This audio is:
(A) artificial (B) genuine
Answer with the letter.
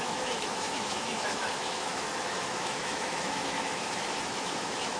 A